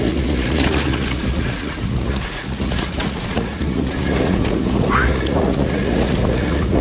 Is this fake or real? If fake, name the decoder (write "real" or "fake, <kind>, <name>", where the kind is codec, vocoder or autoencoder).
fake, vocoder, Vocos